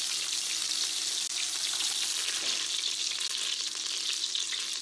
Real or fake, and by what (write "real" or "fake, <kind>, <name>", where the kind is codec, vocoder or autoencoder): real